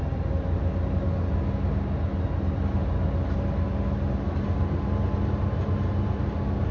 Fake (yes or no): no